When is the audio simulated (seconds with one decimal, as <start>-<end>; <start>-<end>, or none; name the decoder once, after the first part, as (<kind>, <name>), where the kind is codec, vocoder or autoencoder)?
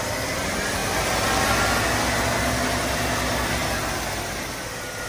none